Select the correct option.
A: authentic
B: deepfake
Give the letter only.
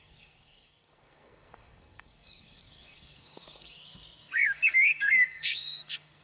B